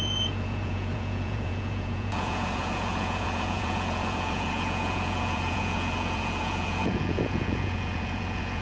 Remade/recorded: remade